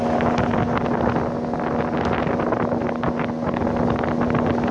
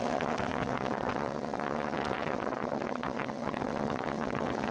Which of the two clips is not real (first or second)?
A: second